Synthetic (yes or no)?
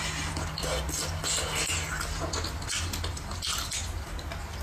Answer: no